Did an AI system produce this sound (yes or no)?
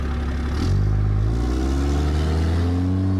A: no